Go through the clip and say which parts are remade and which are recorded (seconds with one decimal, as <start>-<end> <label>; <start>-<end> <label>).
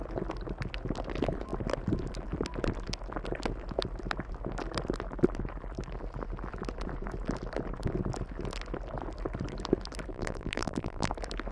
0.0-10.1 recorded; 10.1-11.1 remade; 11.1-11.5 recorded